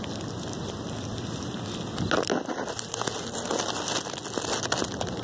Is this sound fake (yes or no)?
no